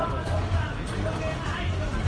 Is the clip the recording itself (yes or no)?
yes